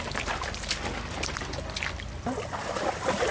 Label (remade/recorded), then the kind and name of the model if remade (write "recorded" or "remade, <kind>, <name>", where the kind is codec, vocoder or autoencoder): recorded